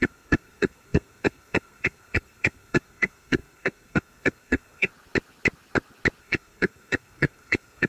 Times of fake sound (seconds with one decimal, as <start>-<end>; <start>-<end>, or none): 0.0-4.9; 6.2-7.9